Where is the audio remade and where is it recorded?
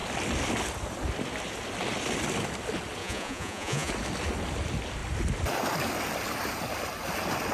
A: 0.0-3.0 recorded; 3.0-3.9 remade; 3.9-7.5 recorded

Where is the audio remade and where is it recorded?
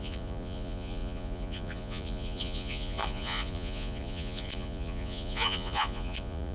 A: 0.0-6.5 remade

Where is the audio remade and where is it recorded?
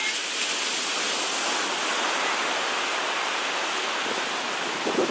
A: 0.0-5.1 recorded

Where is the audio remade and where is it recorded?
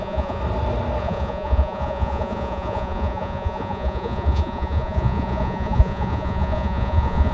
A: 0.0-0.4 remade; 0.4-1.0 recorded; 1.0-7.3 remade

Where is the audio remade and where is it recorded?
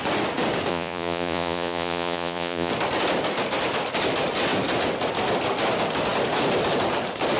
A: 0.0-0.7 recorded; 0.7-2.7 remade; 2.7-7.4 recorded